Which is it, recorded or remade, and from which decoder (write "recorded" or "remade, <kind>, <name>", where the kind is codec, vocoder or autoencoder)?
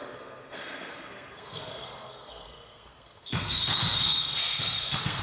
remade, codec, SNAC